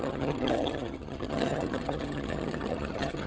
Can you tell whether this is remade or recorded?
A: remade